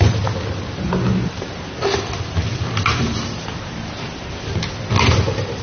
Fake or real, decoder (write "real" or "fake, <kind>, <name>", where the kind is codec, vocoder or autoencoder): real